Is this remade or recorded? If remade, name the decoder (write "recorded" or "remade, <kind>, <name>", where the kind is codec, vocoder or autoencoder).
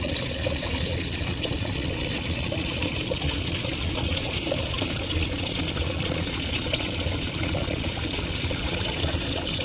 remade, vocoder, Vocos